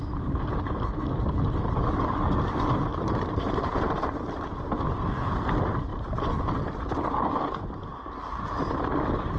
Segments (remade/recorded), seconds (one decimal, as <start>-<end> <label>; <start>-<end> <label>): 0.0-2.9 recorded; 2.9-3.5 remade; 3.5-5.9 recorded; 5.9-7.2 remade; 7.2-9.4 recorded